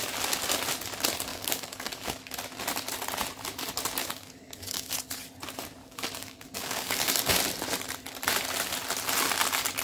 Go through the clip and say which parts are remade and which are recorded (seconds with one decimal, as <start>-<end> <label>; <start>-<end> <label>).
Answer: 0.0-1.3 recorded; 1.3-2.3 remade; 2.3-4.0 recorded; 4.0-4.9 remade; 4.9-5.8 recorded; 5.8-7.4 remade; 7.4-9.8 recorded